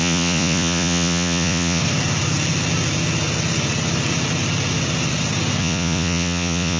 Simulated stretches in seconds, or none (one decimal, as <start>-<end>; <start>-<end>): 0.0-1.8; 5.6-6.8